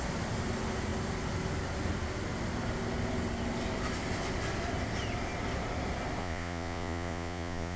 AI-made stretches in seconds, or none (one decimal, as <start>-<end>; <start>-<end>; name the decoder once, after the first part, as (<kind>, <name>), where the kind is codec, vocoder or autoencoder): 6.2-7.8 (vocoder, Vocos)